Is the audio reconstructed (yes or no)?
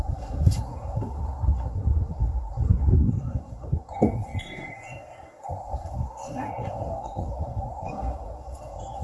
yes